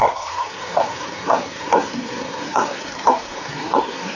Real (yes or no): no